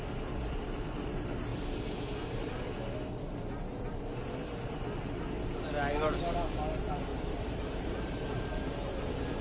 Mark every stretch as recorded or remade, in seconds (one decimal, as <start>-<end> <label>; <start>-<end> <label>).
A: 0.0-7.1 recorded; 7.1-9.0 remade; 9.0-9.4 recorded

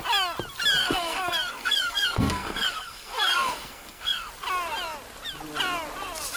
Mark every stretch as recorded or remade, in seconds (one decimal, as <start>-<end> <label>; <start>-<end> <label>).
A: 0.0-0.8 recorded; 0.8-4.3 remade; 4.3-6.4 recorded

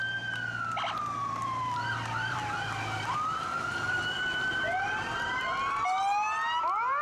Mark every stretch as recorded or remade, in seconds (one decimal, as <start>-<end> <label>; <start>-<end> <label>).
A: 0.0-1.2 recorded; 1.2-5.4 remade; 5.4-7.0 recorded

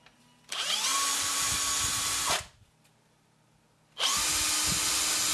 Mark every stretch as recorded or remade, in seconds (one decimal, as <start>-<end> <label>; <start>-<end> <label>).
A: 0.0-0.9 recorded; 0.9-1.5 remade; 1.5-5.3 recorded